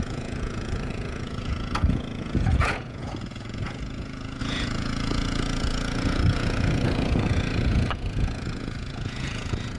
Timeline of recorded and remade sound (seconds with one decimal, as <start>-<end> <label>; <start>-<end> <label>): 0.0-9.8 remade